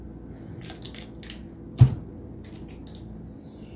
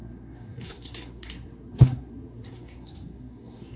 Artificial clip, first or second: second